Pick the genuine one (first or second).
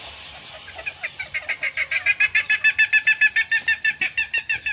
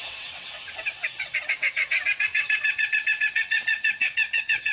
first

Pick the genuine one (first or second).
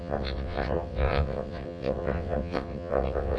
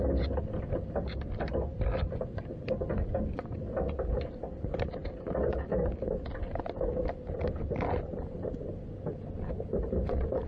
second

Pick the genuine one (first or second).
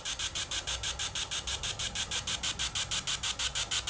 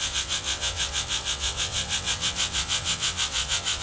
first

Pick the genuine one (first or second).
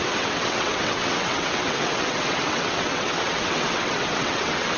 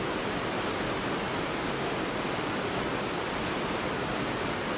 second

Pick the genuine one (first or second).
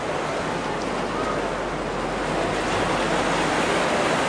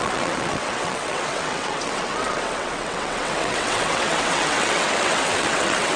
first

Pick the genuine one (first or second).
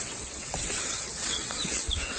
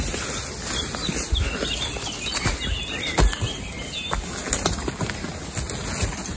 second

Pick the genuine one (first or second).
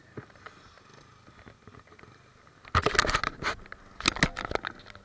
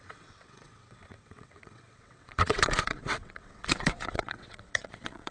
first